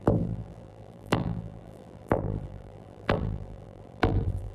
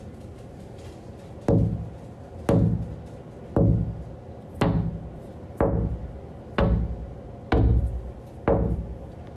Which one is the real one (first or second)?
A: second